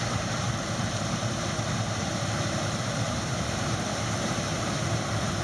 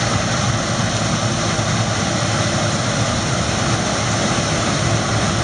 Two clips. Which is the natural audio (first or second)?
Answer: second